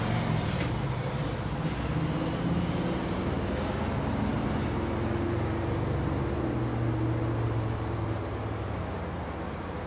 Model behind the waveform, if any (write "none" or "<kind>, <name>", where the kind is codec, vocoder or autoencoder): none